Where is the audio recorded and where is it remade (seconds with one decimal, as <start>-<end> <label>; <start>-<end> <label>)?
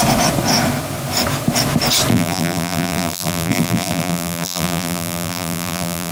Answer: 0.0-2.1 recorded; 2.1-6.1 remade